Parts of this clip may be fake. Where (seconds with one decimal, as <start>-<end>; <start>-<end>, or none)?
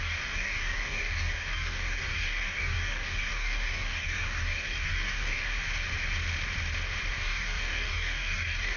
0.0-5.5; 7.1-8.8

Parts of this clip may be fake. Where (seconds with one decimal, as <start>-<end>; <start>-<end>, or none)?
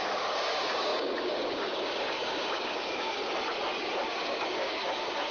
0.0-3.2; 4.0-5.3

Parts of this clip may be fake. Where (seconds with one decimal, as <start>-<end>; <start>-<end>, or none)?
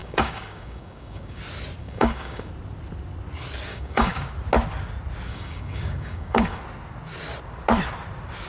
0.0-1.4; 1.8-2.5; 3.7-4.3; 5.3-6.6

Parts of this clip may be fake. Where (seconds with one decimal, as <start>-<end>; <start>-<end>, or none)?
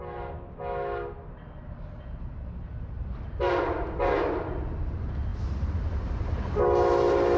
none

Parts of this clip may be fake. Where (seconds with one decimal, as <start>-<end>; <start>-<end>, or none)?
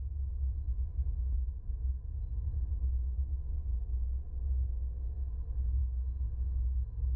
none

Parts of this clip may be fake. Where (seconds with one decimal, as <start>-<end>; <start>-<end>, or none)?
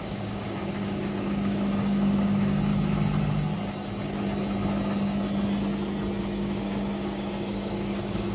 0.0-2.7; 6.2-8.3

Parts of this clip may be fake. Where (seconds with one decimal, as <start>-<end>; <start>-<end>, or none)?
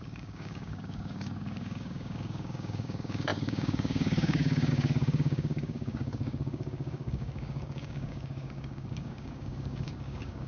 0.0-10.5